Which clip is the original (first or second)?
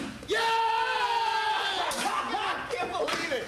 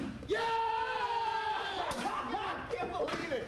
first